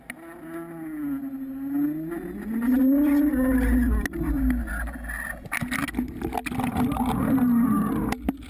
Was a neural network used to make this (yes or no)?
no